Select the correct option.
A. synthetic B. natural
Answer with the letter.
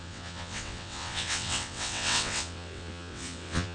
A